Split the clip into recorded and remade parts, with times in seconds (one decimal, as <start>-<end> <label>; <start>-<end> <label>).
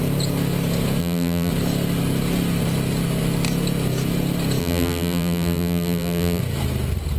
0.0-1.0 recorded; 1.0-1.5 remade; 1.5-4.6 recorded; 4.6-6.4 remade; 6.4-7.2 recorded